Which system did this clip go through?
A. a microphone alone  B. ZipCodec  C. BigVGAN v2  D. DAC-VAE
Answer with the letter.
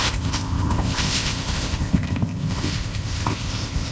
B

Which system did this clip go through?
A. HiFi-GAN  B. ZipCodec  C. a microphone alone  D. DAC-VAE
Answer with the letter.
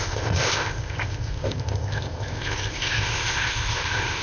B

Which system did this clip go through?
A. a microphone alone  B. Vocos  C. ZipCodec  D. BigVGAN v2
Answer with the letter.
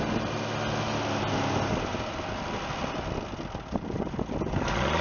A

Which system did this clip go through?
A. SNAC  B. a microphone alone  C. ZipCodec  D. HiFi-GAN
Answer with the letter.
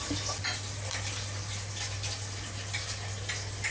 B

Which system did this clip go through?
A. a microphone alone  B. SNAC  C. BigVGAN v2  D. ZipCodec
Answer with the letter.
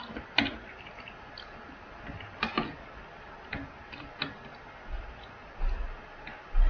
A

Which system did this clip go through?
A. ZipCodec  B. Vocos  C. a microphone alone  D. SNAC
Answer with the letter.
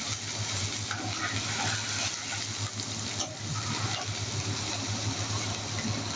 C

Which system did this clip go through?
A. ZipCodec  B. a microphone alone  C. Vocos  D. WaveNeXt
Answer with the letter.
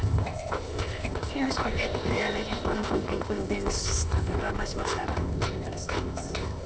A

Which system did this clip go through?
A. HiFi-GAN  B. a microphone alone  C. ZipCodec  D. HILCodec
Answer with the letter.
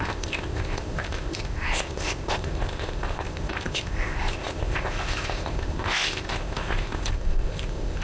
C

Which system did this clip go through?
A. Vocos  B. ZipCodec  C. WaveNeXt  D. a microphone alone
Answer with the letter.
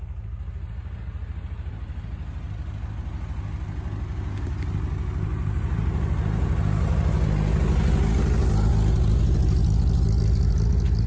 D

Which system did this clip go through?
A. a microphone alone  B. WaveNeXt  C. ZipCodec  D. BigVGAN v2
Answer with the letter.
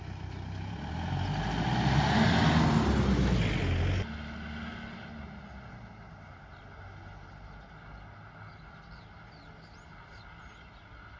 A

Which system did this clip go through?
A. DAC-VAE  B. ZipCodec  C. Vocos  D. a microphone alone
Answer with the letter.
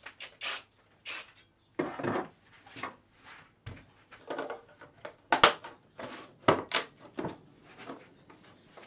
D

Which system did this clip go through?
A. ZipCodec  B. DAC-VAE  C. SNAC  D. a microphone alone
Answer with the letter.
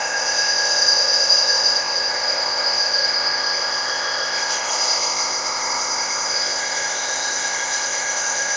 A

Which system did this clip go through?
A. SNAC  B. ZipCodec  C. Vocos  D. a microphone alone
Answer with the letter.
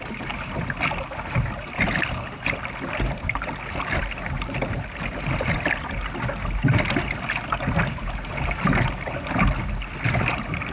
D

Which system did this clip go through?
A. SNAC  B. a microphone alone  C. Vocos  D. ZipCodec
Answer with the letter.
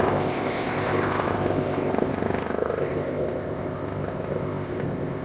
D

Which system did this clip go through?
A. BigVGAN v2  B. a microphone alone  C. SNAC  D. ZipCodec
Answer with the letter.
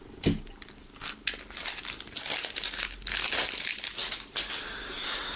B